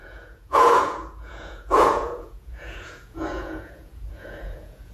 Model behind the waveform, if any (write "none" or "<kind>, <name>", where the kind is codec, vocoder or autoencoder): vocoder, Vocos